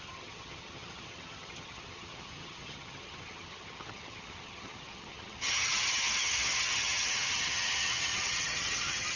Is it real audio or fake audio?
fake